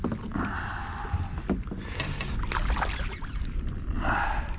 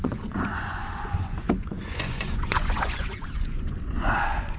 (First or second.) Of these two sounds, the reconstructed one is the second